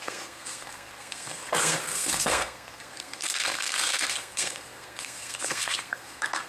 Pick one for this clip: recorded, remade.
remade